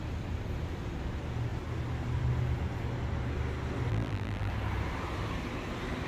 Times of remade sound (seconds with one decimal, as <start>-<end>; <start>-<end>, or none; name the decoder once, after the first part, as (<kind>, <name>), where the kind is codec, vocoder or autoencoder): 3.9-4.5 (vocoder, BigVGAN v2)